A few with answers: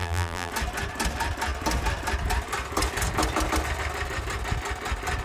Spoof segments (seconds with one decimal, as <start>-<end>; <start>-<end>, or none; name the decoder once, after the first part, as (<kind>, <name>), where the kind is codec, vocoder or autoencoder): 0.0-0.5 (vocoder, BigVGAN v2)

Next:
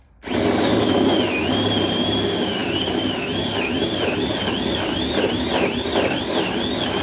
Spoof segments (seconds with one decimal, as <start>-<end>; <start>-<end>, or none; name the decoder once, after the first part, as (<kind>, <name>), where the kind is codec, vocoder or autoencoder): none

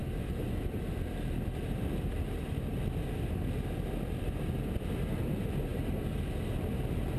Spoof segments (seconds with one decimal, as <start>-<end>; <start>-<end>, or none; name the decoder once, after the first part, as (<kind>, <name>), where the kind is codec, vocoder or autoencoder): 0.0-4.3 (vocoder, BigVGAN v2)

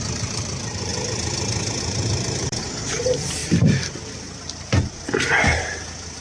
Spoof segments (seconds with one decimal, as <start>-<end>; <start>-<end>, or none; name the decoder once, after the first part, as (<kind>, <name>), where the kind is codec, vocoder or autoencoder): 0.0-0.9 (vocoder, BigVGAN v2); 1.8-3.4

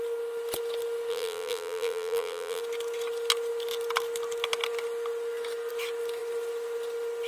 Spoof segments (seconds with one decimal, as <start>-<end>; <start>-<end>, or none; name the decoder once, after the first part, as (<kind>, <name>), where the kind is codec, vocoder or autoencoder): 1.1-2.6 (vocoder, BigVGAN v2)